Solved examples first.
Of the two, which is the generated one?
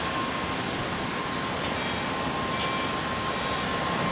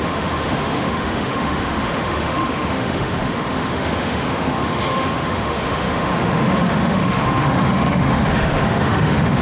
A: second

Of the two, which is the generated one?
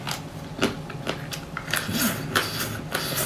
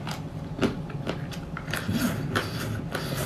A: second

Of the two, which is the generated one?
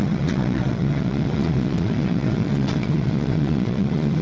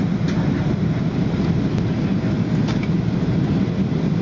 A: first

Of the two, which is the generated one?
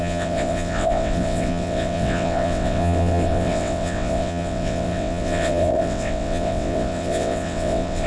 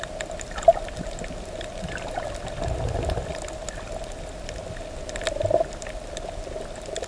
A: first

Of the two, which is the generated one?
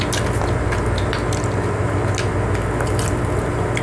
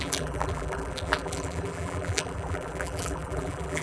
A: second